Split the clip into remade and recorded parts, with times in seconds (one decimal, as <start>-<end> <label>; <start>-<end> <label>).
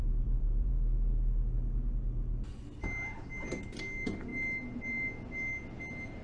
0.0-0.7 remade; 0.7-6.2 recorded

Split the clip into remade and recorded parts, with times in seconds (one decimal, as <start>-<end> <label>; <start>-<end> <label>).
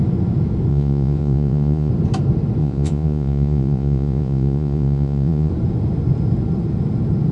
0.0-0.7 recorded; 0.7-1.9 remade; 1.9-2.6 recorded; 2.6-5.5 remade; 5.5-7.3 recorded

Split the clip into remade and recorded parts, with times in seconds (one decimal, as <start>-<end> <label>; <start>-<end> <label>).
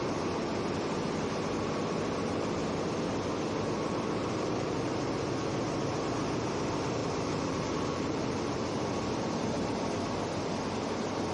0.0-4.2 recorded; 4.2-4.9 remade; 4.9-7.0 recorded; 7.0-8.2 remade; 8.2-11.3 recorded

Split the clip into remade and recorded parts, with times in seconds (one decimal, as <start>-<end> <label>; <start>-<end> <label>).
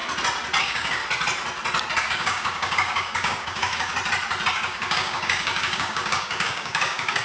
0.0-0.6 recorded; 0.6-1.0 remade; 1.0-2.0 recorded; 2.0-3.9 remade; 3.9-4.5 recorded; 4.5-7.2 remade